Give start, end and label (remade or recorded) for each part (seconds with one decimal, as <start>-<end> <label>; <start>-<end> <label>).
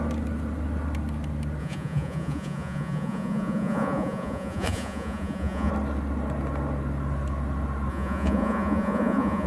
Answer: 0.0-1.6 recorded; 1.6-5.7 remade; 5.7-7.9 recorded; 7.9-9.5 remade